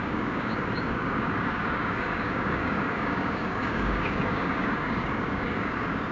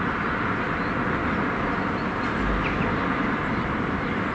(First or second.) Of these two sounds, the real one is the second